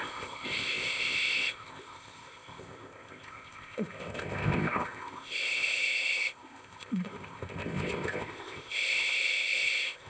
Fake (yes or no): yes